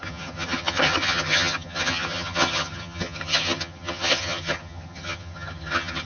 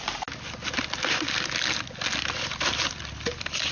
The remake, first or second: first